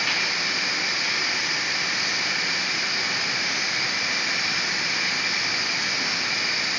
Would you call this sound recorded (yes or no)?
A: yes